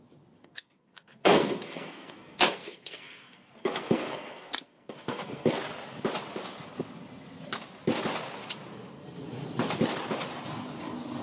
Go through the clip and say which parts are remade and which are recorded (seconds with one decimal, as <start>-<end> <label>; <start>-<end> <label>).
0.0-0.4 recorded; 0.4-5.6 remade; 5.6-11.2 recorded